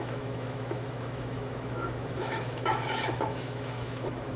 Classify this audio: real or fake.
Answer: fake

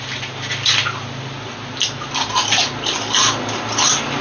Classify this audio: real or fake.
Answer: real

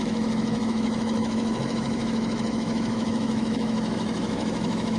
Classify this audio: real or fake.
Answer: fake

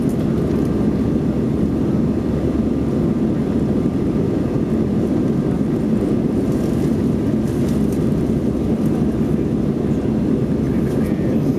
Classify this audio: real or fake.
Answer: real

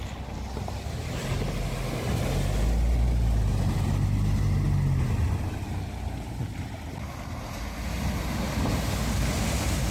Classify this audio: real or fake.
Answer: real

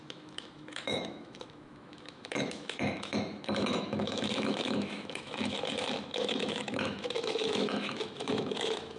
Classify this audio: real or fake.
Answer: fake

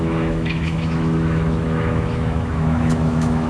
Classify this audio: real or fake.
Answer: fake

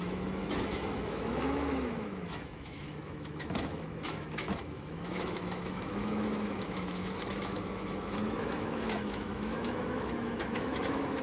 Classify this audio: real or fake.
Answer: fake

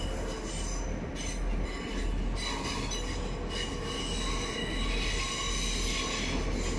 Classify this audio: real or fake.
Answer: real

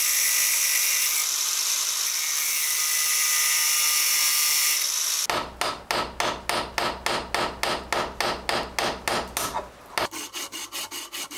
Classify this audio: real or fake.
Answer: real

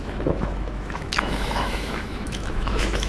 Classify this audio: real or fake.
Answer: fake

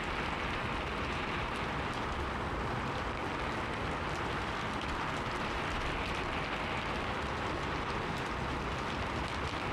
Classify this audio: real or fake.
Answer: real